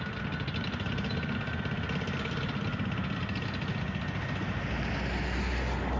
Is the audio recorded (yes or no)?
yes